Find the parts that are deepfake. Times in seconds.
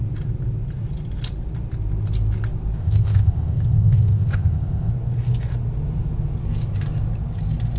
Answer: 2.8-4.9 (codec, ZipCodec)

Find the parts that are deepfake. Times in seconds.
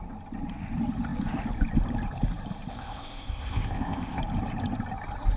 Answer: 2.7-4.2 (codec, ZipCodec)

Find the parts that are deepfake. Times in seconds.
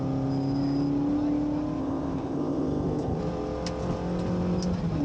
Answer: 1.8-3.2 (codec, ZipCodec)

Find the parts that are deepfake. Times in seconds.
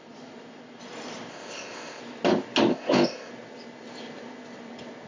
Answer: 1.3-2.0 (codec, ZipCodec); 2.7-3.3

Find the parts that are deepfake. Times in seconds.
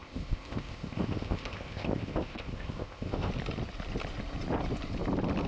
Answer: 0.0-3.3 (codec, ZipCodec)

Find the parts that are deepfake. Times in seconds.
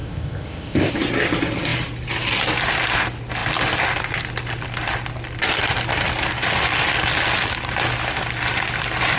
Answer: 0.0-0.9 (codec, ZipCodec)